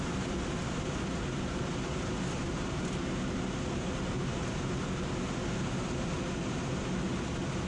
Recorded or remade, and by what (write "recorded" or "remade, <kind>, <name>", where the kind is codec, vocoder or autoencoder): recorded